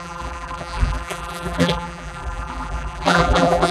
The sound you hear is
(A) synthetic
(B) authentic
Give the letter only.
A